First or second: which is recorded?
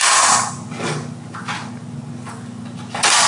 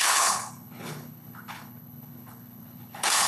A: first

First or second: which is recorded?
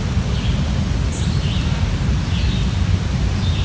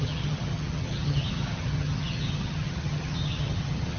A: first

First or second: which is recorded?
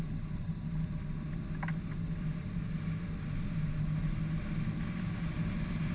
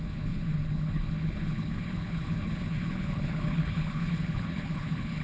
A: first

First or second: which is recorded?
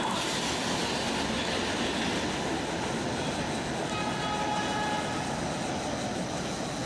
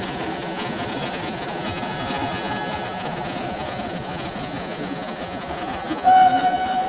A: first